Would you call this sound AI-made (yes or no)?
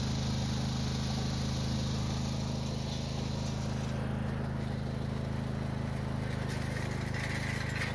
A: no